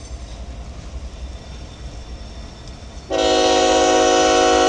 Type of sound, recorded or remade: recorded